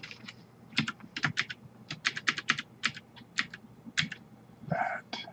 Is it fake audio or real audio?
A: real